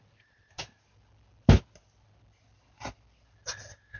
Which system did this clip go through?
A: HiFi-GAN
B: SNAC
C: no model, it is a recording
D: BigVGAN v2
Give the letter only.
C